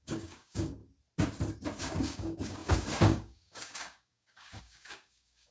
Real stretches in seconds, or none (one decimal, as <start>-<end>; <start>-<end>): 0.8-1.8